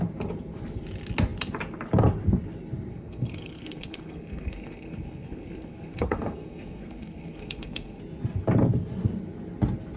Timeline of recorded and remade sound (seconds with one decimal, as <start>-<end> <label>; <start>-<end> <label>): 0.0-2.9 recorded; 2.9-8.0 remade; 8.0-10.0 recorded